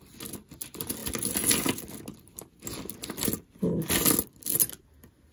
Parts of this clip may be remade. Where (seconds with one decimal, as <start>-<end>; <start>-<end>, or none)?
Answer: none